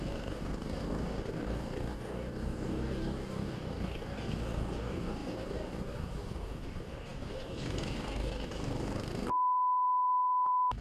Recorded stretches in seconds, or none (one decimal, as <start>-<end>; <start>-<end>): none